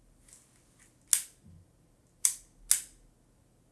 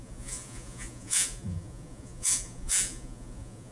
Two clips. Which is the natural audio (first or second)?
first